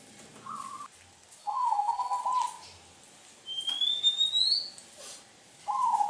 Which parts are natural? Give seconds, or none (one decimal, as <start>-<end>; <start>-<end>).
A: 0.0-1.4; 2.2-6.1